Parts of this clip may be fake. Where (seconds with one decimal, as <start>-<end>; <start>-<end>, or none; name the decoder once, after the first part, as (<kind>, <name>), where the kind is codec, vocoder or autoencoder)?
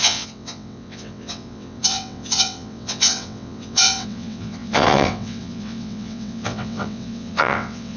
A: 0.0-8.0 (vocoder, WaveNeXt)